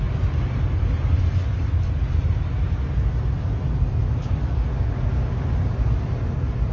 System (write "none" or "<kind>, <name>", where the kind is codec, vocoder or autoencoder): none